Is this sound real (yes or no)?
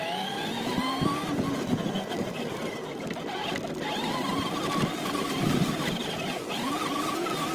yes